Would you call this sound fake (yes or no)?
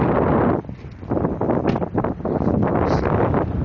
no